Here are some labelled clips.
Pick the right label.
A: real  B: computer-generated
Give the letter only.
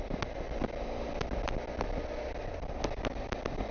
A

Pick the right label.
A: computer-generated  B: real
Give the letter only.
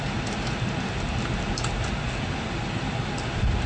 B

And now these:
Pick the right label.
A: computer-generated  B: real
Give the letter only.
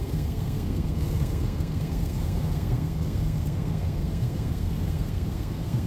A